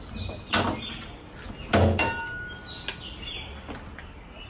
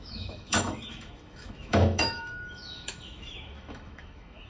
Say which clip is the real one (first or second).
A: first